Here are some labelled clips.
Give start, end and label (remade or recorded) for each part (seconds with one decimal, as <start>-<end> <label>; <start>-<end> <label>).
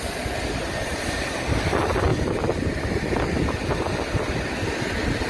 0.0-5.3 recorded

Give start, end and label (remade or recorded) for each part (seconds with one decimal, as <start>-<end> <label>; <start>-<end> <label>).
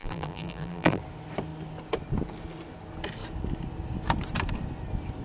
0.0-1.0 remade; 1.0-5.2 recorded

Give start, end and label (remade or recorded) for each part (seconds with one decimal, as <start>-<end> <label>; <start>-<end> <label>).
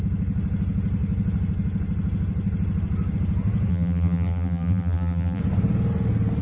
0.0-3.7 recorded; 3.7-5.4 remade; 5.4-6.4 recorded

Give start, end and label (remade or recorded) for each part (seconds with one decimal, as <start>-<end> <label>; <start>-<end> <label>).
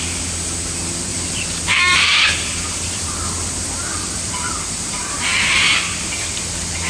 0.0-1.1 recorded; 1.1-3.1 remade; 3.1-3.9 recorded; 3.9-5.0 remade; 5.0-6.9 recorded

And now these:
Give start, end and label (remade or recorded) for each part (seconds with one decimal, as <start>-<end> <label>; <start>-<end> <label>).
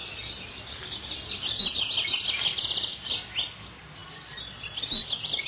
0.0-1.6 remade; 1.6-5.5 recorded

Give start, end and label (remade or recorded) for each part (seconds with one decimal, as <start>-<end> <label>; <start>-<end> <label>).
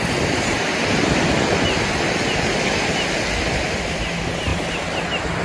0.0-5.4 recorded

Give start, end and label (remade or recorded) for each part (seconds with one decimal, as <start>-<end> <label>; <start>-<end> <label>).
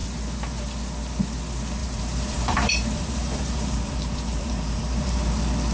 0.0-1.8 recorded; 1.8-5.2 remade; 5.2-5.7 recorded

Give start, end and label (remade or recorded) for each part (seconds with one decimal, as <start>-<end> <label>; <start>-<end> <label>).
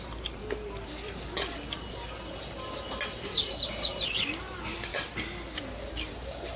0.0-0.4 remade; 0.4-4.4 recorded; 4.4-4.9 remade; 4.9-5.9 recorded; 5.9-6.6 remade